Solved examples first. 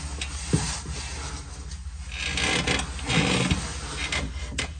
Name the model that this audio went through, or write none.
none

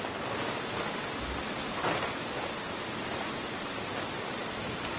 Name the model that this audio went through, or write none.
none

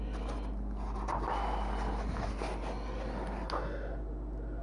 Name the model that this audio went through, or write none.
none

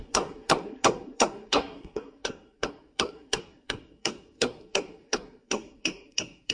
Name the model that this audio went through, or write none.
codec, SNAC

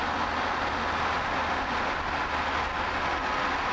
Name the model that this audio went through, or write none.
none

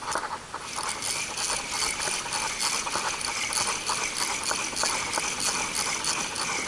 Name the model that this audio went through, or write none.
none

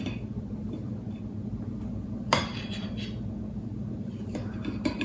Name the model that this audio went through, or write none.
none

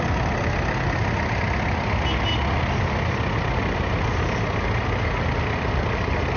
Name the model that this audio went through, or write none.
none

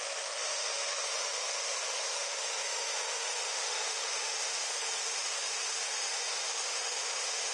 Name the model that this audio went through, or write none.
autoencoder, DAC-VAE